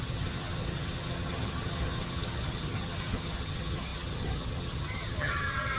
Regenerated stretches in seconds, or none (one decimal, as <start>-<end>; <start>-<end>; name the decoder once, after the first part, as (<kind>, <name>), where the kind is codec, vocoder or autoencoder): 0.0-5.8 (vocoder, HiFi-GAN)

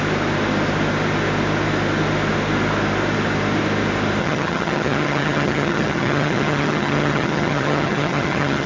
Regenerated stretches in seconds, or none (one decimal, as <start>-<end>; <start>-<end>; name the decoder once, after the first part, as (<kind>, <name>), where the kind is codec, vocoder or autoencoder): 4.2-8.7 (vocoder, HiFi-GAN)

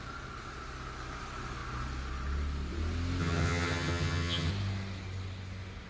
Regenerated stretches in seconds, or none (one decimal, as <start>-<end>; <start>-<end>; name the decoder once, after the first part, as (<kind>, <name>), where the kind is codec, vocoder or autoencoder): 3.2-4.5 (vocoder, HiFi-GAN)

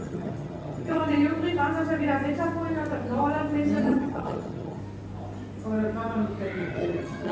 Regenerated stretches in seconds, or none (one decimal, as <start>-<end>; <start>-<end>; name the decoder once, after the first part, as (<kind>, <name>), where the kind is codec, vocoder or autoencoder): 0.0-1.0 (vocoder, HiFi-GAN); 3.8-4.8; 6.6-7.3

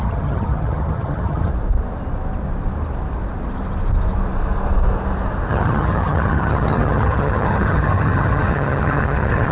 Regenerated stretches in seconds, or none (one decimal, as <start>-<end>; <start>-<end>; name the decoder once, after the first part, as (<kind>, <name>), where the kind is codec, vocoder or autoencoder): 0.0-1.5 (vocoder, HiFi-GAN); 5.5-9.5

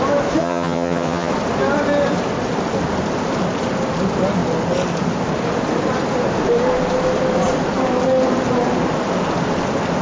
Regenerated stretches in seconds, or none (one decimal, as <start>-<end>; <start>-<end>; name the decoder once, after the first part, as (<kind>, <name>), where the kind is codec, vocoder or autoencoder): 0.4-1.3 (vocoder, HiFi-GAN)

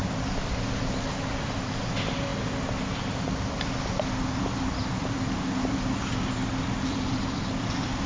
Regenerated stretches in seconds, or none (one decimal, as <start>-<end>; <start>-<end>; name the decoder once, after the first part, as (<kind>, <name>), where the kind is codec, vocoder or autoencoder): none

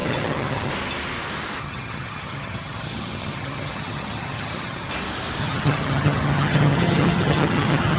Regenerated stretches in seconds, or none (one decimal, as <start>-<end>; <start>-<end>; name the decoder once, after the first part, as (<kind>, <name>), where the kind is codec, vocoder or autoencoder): 0.0-0.7 (vocoder, HiFi-GAN); 1.6-4.9; 5.4-8.0